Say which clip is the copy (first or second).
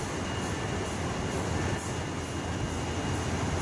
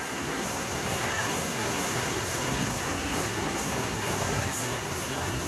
second